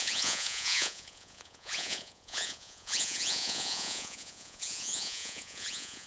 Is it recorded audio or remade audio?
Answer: remade